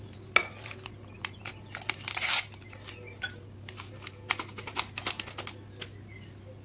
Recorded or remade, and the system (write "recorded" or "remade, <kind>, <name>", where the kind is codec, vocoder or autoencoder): recorded